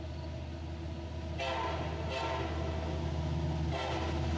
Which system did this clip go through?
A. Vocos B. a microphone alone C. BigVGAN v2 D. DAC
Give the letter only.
B